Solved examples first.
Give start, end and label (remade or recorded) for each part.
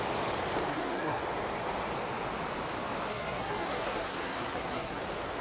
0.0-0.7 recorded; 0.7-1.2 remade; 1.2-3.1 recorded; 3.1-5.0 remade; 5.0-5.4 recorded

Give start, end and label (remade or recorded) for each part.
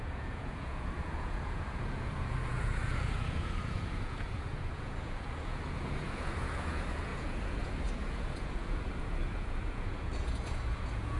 0.0-11.2 remade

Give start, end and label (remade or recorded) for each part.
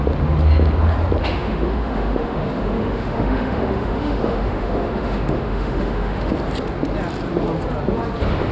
0.0-1.2 recorded; 1.2-6.3 remade; 6.3-8.5 recorded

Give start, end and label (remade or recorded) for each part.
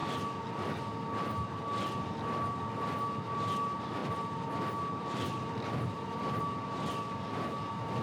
0.0-4.0 recorded; 4.0-6.4 remade; 6.4-8.0 recorded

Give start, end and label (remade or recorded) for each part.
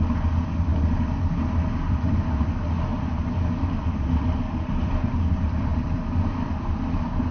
0.0-7.3 recorded